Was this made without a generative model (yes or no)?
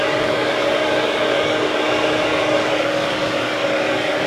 no